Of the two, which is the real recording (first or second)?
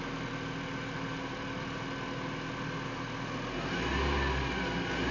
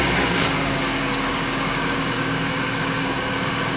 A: first